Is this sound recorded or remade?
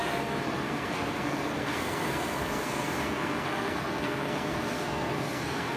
remade